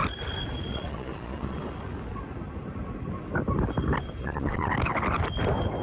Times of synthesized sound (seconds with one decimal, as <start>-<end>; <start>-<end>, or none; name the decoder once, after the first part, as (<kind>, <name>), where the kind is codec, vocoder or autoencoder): 0.7-1.6 (vocoder, Vocos); 4.2-4.7